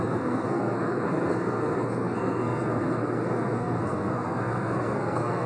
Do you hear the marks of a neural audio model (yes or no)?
yes